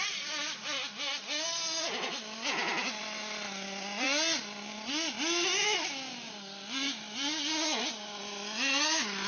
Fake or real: real